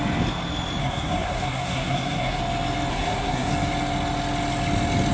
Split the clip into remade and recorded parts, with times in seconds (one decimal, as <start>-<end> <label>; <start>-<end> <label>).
0.0-0.8 recorded; 0.8-2.4 remade; 2.4-2.9 recorded; 2.9-3.5 remade; 3.5-5.1 recorded